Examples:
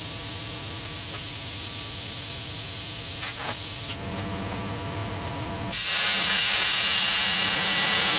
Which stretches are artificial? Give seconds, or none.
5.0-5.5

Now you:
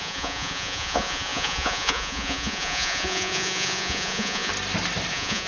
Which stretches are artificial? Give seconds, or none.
0.0-4.5; 5.1-5.5

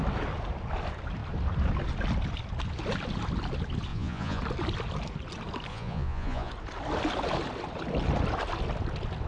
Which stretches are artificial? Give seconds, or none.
3.9-4.4; 5.7-6.5

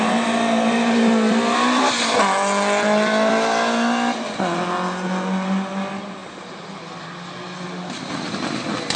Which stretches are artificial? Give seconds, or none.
none

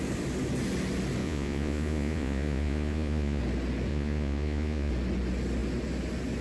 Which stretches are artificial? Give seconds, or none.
1.2-3.4; 3.9-4.9

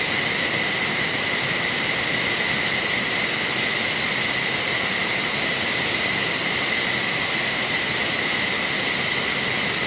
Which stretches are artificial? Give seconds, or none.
none

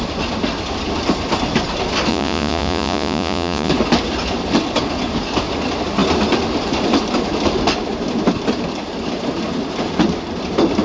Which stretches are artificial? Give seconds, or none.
2.1-3.7